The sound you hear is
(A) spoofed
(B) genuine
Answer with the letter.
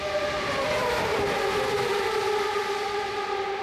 A